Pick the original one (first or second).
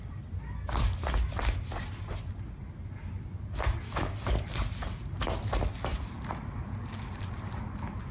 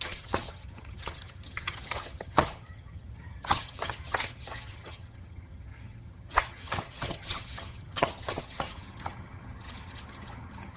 first